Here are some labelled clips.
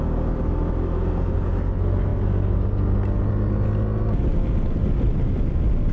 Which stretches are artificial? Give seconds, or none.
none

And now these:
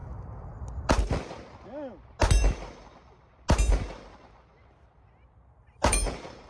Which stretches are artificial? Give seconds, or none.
4.5-6.5

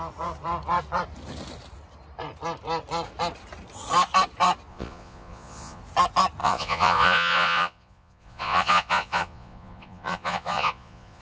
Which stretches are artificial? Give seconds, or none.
4.7-5.8; 6.4-11.2

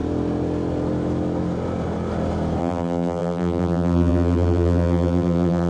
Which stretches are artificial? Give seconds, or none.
2.6-5.7

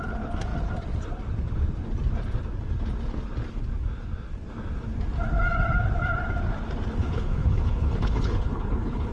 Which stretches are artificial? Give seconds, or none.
7.0-9.1

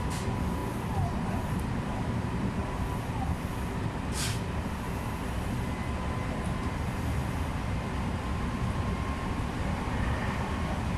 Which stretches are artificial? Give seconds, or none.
0.0-0.6; 1.3-2.6; 5.5-11.0